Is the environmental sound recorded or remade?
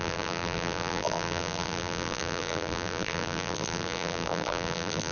remade